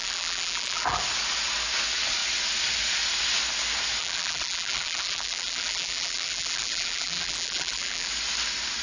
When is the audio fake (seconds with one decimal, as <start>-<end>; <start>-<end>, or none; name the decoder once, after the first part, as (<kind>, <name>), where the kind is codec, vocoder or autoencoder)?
0.0-1.0 (vocoder, BigVGAN v2); 4.0-8.1